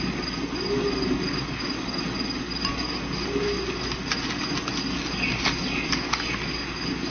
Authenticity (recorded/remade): recorded